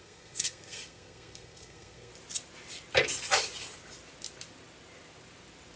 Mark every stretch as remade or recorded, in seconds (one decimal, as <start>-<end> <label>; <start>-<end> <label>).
0.0-2.1 remade; 2.1-5.8 recorded